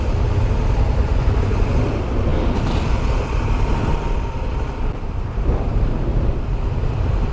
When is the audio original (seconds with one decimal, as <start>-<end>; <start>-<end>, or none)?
0.0-1.0; 1.8-7.3